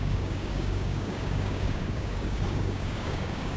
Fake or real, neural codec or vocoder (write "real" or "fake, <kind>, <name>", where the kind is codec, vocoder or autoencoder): fake, codec, DAC